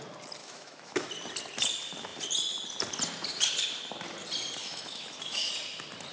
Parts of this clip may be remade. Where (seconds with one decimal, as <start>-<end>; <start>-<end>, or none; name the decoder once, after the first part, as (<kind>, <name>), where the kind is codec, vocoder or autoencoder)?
0.4-1.1 (autoencoder, DAC-VAE); 4.6-5.5

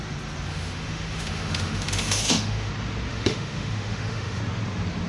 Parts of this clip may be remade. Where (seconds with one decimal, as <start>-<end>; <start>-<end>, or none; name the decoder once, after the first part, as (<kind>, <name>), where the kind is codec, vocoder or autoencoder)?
0.5-2.7 (autoencoder, DAC-VAE); 3.1-4.4